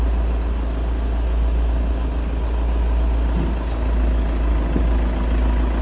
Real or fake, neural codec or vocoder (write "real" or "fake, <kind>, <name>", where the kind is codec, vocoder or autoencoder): real